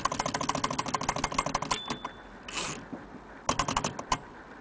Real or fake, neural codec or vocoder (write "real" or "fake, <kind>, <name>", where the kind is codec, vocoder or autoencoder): real